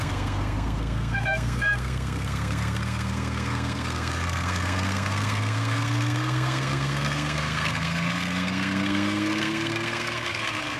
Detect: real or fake fake